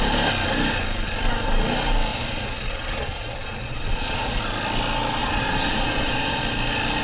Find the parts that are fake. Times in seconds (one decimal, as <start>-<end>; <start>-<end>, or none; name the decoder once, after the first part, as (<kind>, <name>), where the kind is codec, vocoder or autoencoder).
2.1-4.4 (vocoder, Vocos); 5.2-6.4